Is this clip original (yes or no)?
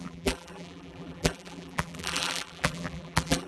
no